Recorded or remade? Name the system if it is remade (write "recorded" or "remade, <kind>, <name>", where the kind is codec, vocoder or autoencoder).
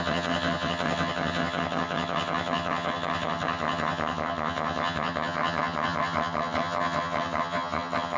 remade, vocoder, HiFi-GAN